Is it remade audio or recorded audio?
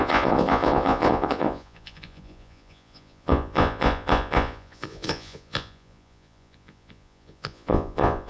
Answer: remade